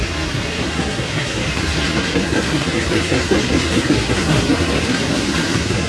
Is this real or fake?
fake